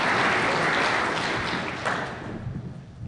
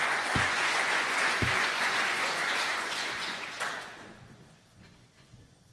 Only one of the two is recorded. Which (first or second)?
first